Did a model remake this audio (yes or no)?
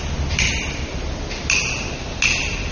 no